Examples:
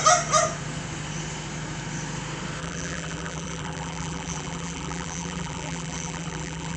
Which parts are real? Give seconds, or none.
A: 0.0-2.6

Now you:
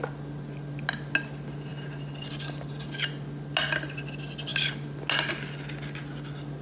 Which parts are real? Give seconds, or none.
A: 0.0-6.6

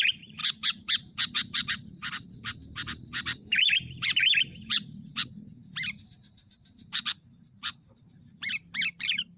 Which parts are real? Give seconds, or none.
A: none

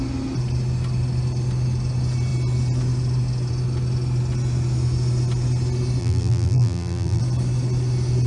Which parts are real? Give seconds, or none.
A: 0.0-6.0; 7.2-8.3

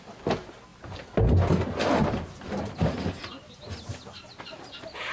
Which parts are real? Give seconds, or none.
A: 0.0-2.0; 3.2-5.1

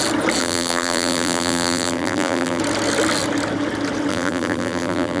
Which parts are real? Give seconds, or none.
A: 0.0-0.4; 2.6-4.1

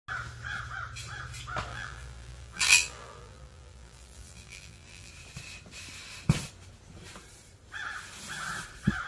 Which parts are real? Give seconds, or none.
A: 0.0-1.7; 5.1-9.1

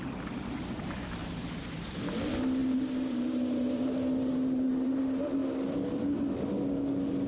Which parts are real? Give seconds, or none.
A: 0.0-1.2; 1.9-2.6; 5.0-7.3